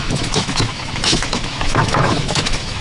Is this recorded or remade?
remade